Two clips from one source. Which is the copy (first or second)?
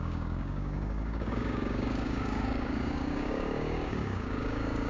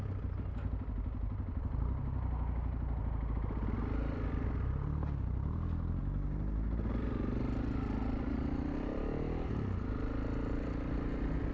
first